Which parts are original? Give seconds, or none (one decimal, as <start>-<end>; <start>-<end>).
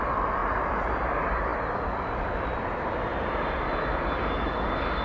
0.0-1.5; 3.1-5.0